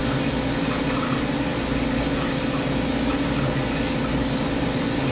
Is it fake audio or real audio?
real